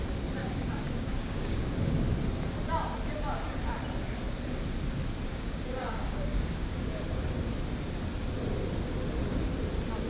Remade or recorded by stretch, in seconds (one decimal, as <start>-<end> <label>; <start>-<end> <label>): 0.0-0.4 recorded; 0.4-2.2 remade; 2.2-5.3 recorded; 5.3-7.2 remade; 7.2-10.1 recorded